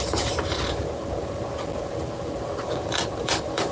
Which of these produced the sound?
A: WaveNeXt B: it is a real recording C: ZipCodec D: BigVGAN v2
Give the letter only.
D